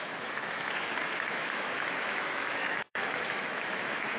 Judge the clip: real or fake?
fake